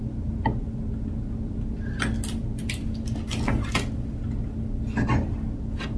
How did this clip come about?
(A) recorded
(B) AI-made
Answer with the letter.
A